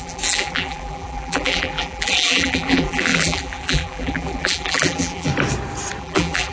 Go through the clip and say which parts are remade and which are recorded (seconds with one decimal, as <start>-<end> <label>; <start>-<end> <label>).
0.0-5.3 remade; 5.3-6.0 recorded; 6.0-6.5 remade